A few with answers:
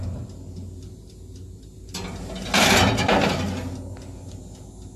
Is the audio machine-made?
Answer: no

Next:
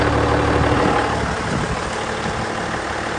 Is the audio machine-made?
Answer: no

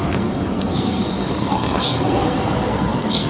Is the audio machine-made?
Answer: yes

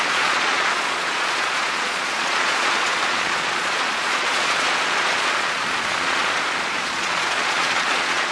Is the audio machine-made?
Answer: yes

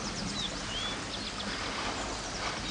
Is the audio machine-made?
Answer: no